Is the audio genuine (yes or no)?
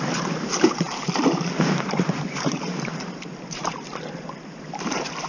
no